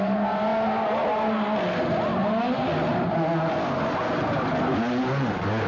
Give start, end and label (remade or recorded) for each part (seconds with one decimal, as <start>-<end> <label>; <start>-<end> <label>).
0.0-5.7 recorded